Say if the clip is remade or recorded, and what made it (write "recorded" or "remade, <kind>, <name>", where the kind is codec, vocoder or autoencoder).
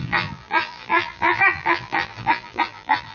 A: remade, vocoder, BigVGAN v2